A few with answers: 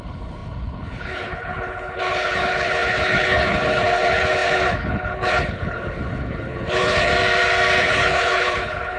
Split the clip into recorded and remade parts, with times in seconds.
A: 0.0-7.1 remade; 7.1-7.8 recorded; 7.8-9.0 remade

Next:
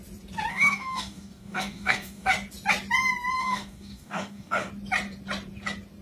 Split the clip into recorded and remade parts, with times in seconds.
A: 0.0-0.5 recorded; 0.5-2.3 remade; 2.3-3.4 recorded; 3.4-4.7 remade; 4.7-6.0 recorded

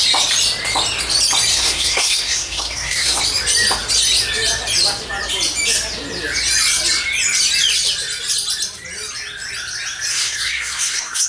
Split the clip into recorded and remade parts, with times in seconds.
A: 0.0-1.5 recorded; 1.5-3.2 remade; 3.2-10.1 recorded; 10.1-11.3 remade